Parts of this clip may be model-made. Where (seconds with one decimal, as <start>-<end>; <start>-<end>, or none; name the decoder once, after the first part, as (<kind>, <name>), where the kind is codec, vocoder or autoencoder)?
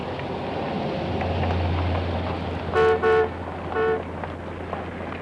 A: none